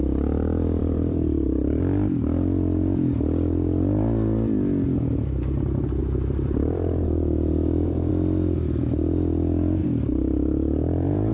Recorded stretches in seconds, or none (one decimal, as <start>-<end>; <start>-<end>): 0.0-0.8; 1.8-6.0; 8.1-9.8